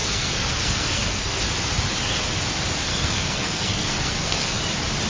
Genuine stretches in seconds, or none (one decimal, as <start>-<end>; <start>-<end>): 1.4-2.9; 4.6-5.1